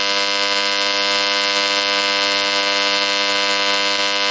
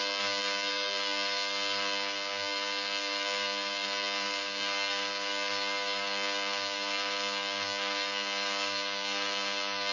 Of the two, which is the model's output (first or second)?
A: second